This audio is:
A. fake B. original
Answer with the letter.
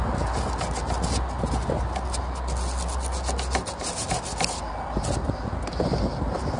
B